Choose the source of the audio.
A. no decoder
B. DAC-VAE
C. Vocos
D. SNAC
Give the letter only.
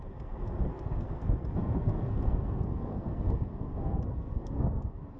D